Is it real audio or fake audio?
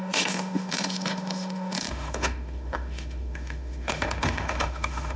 fake